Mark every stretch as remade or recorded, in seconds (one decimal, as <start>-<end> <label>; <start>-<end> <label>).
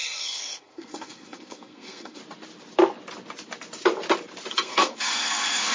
0.0-2.2 remade; 2.2-4.5 recorded; 4.5-5.7 remade